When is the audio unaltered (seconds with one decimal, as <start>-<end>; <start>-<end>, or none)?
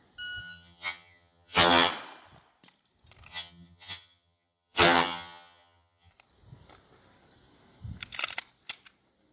0.0-0.4; 1.9-3.3; 6.1-9.3